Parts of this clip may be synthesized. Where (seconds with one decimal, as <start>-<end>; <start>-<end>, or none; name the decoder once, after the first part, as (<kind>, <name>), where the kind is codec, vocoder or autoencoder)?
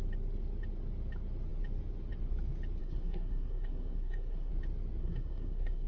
2.8-4.5 (codec, SNAC); 5.0-5.9